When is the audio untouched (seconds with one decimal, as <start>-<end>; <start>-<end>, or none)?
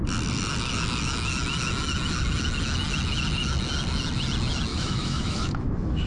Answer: 0.0-4.7